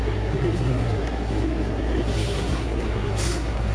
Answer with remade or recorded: remade